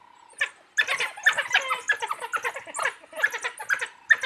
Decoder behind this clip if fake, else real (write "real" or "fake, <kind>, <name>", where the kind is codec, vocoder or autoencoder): real